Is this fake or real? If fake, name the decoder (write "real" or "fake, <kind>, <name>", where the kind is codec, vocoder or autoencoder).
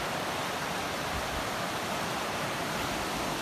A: real